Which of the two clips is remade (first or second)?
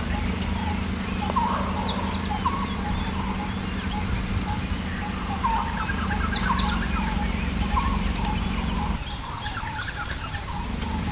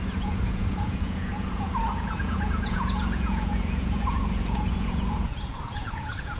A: second